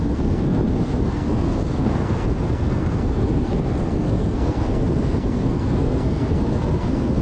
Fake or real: fake